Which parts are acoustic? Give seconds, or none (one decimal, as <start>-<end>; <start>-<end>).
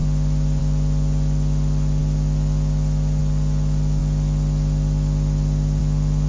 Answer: 0.0-6.3